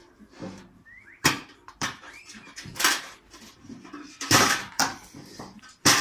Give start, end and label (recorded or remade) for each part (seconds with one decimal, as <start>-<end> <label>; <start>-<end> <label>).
0.0-4.8 remade; 4.8-5.6 recorded; 5.6-6.0 remade

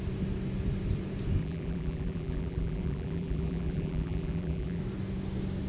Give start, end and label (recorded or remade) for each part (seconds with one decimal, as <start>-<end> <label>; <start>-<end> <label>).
0.0-1.4 recorded; 1.4-4.8 remade; 4.8-5.7 recorded

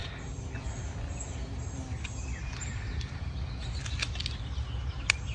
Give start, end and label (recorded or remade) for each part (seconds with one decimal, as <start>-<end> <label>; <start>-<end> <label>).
0.0-5.3 recorded

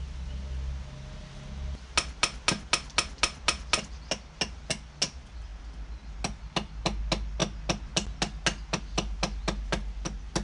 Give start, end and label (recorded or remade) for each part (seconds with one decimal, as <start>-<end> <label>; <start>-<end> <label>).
0.0-10.4 recorded

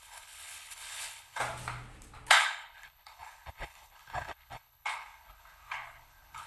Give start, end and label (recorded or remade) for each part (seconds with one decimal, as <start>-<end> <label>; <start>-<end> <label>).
0.0-1.4 remade; 1.4-2.3 recorded; 2.3-6.5 remade

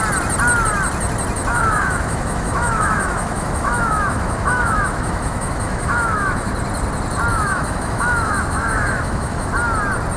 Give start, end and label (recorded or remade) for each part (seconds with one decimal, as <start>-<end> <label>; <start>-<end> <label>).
0.0-1.5 recorded; 1.5-6.5 remade; 6.5-7.3 recorded; 7.3-9.5 remade; 9.5-10.2 recorded